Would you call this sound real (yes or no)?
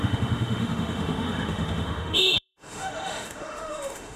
no